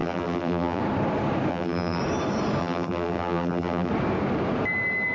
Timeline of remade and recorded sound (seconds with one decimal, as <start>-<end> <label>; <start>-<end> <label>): 0.0-0.8 remade; 0.8-1.5 recorded; 1.5-2.0 remade; 2.0-2.6 recorded; 2.6-3.9 remade; 3.9-5.1 recorded